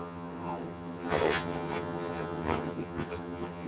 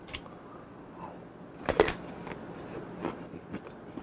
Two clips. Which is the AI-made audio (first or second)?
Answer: first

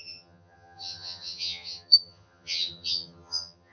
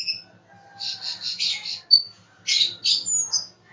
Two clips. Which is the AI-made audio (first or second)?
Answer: first